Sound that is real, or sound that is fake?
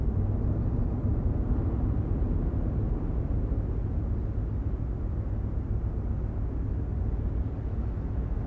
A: real